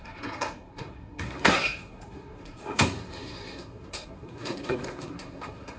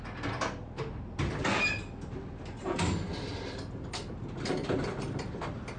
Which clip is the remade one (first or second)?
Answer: first